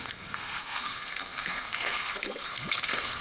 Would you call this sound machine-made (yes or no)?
yes